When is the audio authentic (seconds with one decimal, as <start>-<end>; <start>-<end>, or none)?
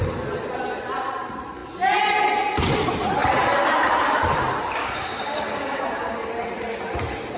0.0-4.8; 5.8-7.4